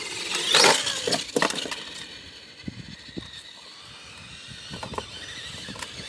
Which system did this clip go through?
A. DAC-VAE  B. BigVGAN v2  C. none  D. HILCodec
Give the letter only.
C